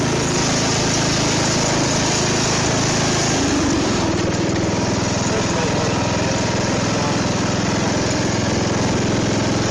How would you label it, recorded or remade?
recorded